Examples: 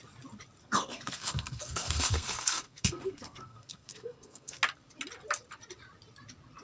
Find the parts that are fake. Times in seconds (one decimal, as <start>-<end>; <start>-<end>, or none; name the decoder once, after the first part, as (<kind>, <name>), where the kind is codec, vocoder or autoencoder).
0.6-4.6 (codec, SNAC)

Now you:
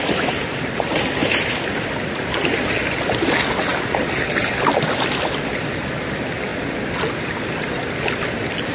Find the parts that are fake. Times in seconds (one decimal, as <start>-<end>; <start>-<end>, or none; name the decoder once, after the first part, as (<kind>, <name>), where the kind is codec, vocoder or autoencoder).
0.0-6.5 (vocoder, BigVGAN v2); 7.2-8.7

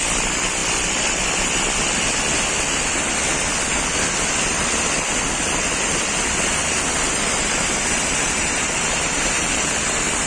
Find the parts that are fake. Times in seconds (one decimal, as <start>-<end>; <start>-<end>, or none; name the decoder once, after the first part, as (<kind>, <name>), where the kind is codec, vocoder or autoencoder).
7.4-9.7 (vocoder, BigVGAN v2)

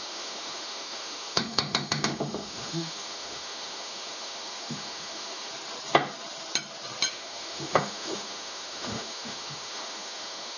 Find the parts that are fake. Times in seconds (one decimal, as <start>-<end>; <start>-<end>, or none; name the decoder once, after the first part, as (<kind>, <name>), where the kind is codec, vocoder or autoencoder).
0.0-5.5 (autoencoder, DAC-VAE); 7.1-10.6

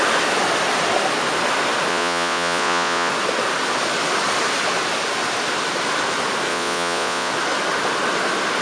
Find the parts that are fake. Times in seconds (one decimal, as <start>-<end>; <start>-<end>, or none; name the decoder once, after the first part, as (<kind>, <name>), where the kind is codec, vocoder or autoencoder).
1.9-3.1 (vocoder, Vocos); 6.5-7.3